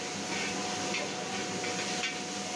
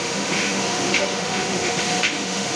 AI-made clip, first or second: second